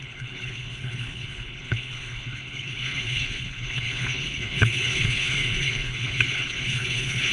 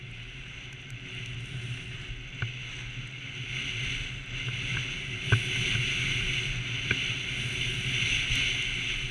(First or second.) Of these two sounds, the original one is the second